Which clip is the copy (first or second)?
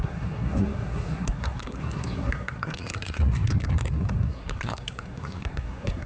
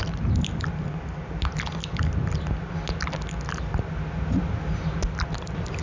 first